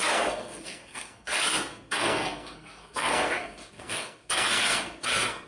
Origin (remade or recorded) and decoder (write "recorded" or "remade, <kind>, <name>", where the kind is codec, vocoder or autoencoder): remade, codec, SNAC